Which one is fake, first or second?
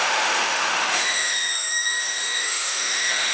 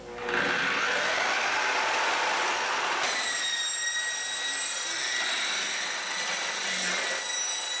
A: first